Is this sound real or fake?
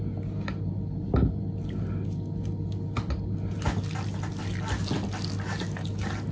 real